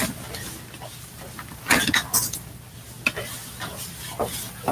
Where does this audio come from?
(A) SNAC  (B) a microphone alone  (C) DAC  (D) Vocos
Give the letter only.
B